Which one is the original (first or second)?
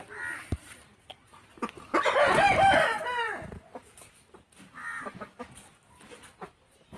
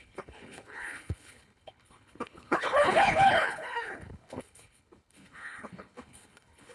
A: first